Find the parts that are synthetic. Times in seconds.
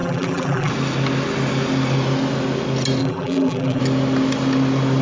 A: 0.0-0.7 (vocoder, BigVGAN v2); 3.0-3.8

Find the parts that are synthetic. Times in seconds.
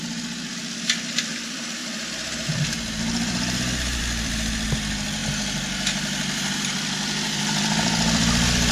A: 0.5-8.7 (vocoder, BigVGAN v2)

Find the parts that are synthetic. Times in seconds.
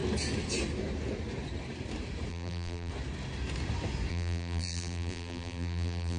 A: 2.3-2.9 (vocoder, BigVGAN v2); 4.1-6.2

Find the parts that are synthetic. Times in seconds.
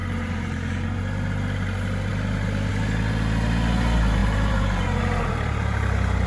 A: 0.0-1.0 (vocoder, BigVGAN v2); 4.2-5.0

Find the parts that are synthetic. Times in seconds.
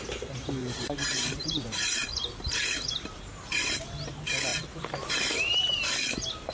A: 0.6-4.1 (vocoder, BigVGAN v2); 4.5-5.7